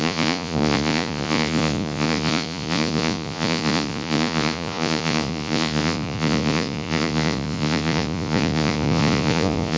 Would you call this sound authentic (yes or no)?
no